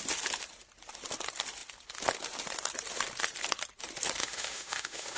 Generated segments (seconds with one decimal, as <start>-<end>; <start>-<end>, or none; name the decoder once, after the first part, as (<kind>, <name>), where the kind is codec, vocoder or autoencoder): 4.2-5.2 (autoencoder, DAC-VAE)